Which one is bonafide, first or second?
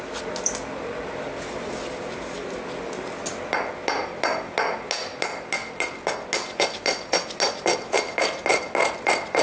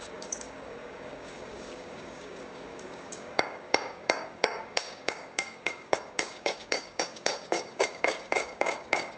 first